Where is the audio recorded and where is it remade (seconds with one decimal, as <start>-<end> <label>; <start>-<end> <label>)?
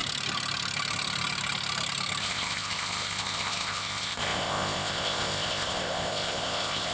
0.0-2.2 recorded; 2.2-6.9 remade